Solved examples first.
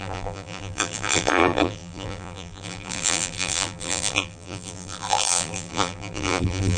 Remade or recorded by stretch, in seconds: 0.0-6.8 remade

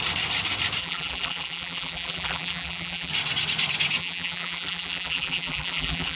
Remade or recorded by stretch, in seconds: 0.0-0.8 recorded; 0.8-3.1 remade; 3.1-4.0 recorded; 4.0-6.2 remade

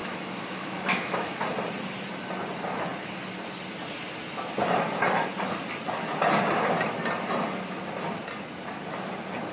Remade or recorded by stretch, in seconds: 0.0-1.4 remade; 1.4-9.5 recorded

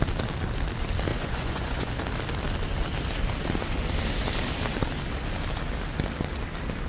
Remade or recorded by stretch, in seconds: 0.0-1.1 recorded; 1.1-1.9 remade; 1.9-6.9 recorded

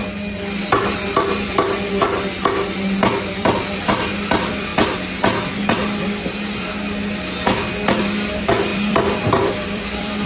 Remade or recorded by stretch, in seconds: 0.0-3.3 recorded; 3.3-4.7 remade; 4.7-8.0 recorded; 8.0-10.3 remade